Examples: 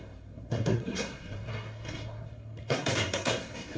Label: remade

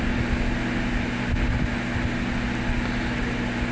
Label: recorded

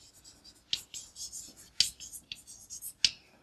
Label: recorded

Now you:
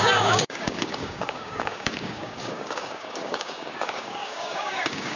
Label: remade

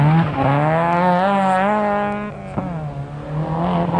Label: recorded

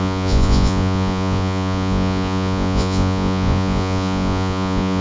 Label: remade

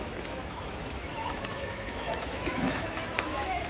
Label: remade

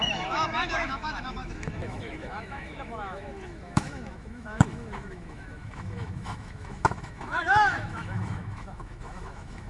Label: remade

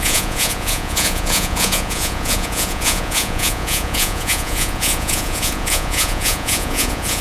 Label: remade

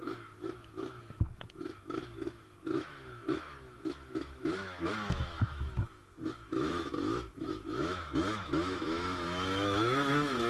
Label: remade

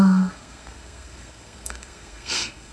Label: remade